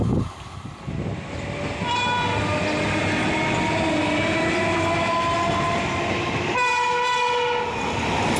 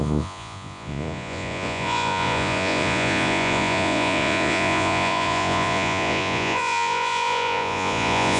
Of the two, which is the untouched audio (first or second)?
first